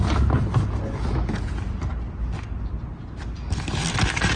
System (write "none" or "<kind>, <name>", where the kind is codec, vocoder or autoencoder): none